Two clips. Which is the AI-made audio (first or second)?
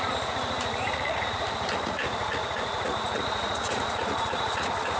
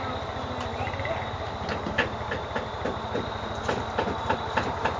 first